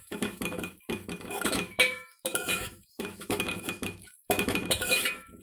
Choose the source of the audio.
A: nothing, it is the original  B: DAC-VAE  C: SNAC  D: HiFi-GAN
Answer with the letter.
B